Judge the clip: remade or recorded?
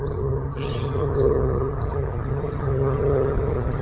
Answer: remade